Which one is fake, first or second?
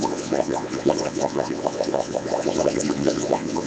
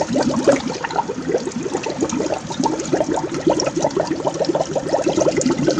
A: first